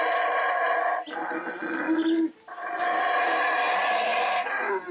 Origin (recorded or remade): recorded